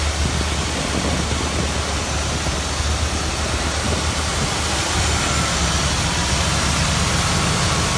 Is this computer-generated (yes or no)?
no